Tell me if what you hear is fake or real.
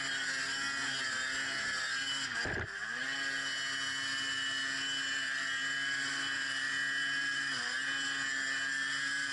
real